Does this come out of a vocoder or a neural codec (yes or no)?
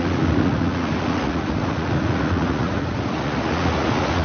yes